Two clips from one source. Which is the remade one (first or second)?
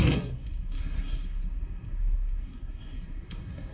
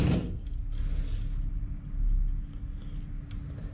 first